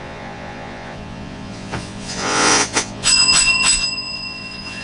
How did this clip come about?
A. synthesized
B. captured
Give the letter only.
A